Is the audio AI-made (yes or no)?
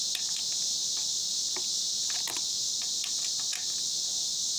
no